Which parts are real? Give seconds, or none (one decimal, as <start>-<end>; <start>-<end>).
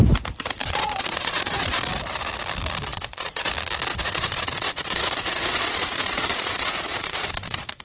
0.0-0.6; 1.8-2.9; 3.5-3.9